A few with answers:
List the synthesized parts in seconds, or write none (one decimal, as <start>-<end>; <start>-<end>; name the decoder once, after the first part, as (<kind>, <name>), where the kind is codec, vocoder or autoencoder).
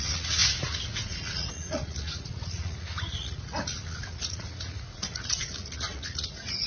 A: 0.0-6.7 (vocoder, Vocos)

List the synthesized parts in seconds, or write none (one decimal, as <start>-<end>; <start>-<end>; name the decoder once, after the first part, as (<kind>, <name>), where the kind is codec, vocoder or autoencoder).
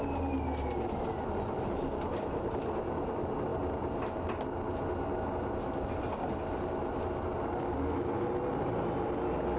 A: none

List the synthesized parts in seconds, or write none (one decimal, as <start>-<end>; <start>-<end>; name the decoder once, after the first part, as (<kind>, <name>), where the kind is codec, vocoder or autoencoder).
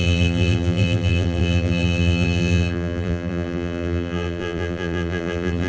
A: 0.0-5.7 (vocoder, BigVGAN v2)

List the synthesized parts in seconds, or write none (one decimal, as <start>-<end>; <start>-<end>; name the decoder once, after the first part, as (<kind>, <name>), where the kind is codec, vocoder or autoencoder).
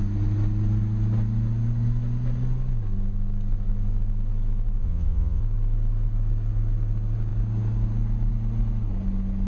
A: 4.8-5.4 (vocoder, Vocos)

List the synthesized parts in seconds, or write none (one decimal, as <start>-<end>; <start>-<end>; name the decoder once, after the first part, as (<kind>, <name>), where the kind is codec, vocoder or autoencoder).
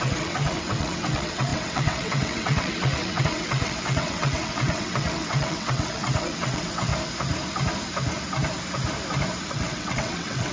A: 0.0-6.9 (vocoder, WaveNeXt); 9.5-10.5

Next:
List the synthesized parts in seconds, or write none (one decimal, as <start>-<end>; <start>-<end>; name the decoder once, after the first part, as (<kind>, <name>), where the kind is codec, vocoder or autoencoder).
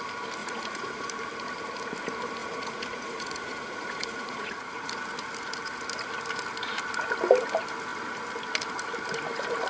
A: 0.4-1.1 (vocoder, Vocos); 2.4-4.9